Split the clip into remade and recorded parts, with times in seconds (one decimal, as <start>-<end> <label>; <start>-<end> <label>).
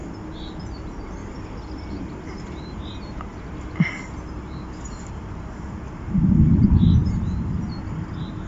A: 0.0-0.6 recorded; 0.6-1.2 remade; 1.2-1.9 recorded; 1.9-7.0 remade; 7.0-8.5 recorded